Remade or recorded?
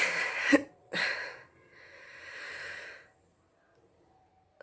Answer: recorded